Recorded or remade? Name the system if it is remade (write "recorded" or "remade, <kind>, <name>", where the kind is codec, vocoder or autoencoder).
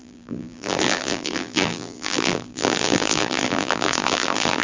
remade, vocoder, BigVGAN v2